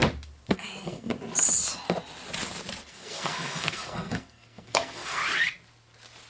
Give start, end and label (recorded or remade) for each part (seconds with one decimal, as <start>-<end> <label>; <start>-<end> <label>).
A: 0.0-0.5 recorded; 0.5-1.1 remade; 1.1-2.9 recorded; 2.9-5.2 remade; 5.2-6.3 recorded